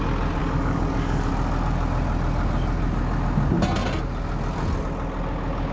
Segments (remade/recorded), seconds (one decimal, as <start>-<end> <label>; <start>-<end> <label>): 0.0-0.4 recorded; 0.4-1.3 remade; 1.3-5.7 recorded